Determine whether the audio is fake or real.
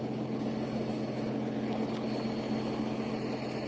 real